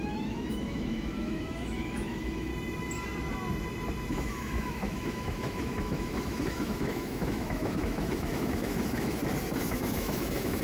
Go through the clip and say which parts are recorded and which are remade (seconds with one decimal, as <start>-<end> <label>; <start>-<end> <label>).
0.0-2.5 remade; 2.5-4.1 recorded; 4.1-9.2 remade; 9.2-9.7 recorded; 9.7-10.6 remade